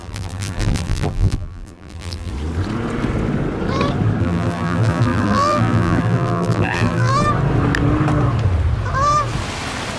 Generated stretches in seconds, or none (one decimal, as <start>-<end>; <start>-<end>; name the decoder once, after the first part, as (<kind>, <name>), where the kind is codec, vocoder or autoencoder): 0.0-2.3 (vocoder, BigVGAN v2); 4.2-7.1

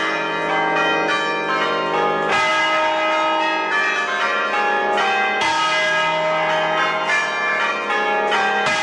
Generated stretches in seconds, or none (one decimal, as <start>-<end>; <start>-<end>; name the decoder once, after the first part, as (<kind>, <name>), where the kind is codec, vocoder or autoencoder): none